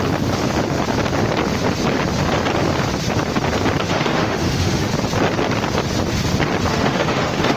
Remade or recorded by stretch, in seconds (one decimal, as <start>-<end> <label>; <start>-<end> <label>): 0.0-3.8 recorded; 3.8-4.9 remade; 4.9-6.7 recorded; 6.7-7.6 remade